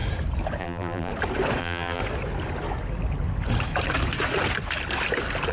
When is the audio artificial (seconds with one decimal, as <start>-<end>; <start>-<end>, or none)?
0.6-1.1; 1.6-2.0